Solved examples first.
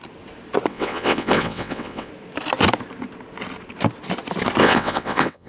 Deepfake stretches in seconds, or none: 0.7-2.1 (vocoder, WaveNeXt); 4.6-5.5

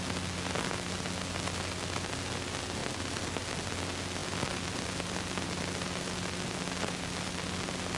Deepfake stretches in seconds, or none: none